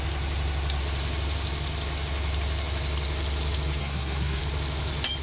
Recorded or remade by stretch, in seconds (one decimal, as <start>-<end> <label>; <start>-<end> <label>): 0.0-3.8 recorded; 3.8-4.4 remade; 4.4-5.2 recorded